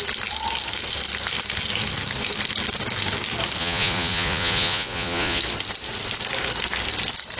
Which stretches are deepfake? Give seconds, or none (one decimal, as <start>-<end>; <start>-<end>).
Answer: 3.6-5.4